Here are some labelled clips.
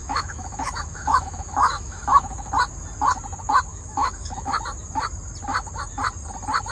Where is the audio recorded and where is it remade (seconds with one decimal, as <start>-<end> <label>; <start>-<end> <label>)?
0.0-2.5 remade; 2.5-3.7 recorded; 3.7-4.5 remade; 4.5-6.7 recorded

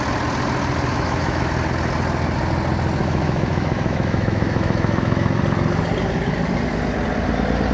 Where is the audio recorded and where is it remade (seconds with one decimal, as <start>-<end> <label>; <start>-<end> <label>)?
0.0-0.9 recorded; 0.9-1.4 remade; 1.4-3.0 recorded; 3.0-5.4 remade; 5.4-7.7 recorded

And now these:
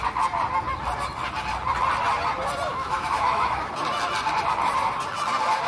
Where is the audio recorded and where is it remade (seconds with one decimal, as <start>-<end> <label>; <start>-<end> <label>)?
0.0-2.7 recorded; 2.7-3.7 remade; 3.7-5.7 recorded

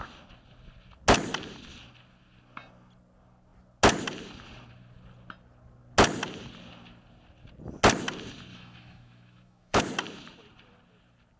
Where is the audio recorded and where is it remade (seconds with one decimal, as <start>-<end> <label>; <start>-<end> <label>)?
0.0-8.5 recorded; 8.5-9.8 remade; 9.8-11.4 recorded

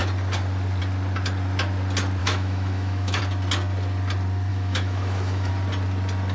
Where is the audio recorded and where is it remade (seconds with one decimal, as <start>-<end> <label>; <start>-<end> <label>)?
0.0-2.2 recorded; 2.2-3.2 remade; 3.2-4.5 recorded; 4.5-5.5 remade; 5.5-6.3 recorded

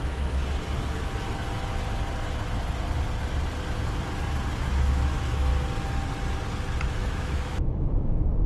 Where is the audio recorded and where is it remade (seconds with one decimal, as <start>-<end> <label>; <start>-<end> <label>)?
0.0-0.4 remade; 0.4-4.6 recorded; 4.6-5.5 remade; 5.5-6.9 recorded; 6.9-8.5 remade